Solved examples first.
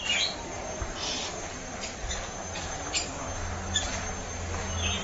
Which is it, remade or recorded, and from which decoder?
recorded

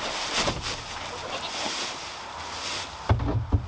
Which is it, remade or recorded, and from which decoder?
recorded